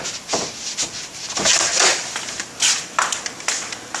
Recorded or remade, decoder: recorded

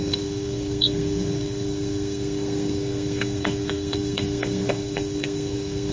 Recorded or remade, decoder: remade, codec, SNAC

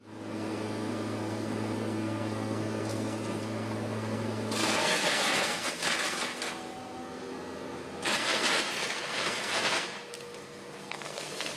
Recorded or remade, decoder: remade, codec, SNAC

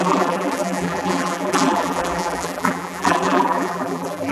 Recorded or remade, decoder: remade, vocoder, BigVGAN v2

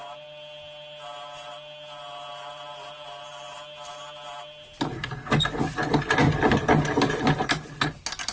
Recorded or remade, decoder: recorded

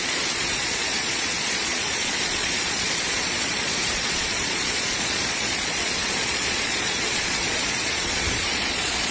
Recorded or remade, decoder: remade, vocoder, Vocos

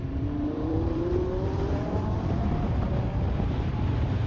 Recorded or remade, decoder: remade, vocoder, BigVGAN v2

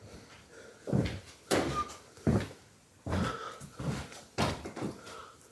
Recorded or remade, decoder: remade, vocoder, BigVGAN v2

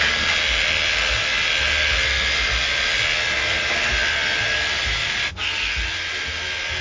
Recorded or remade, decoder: recorded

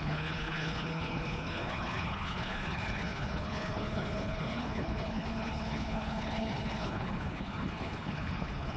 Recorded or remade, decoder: remade, codec, HILCodec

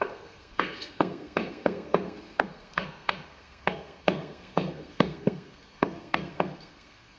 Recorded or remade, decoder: remade, codec, SNAC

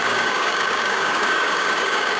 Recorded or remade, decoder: remade, codec, DAC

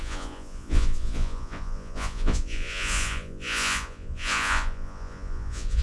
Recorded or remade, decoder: remade, vocoder, Vocos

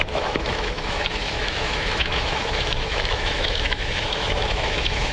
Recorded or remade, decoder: remade, autoencoder, DAC-VAE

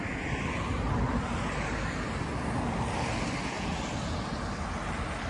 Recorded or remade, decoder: recorded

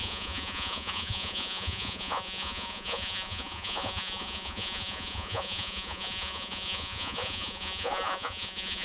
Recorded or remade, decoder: remade, vocoder, Vocos